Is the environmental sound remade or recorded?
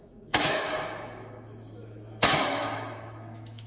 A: remade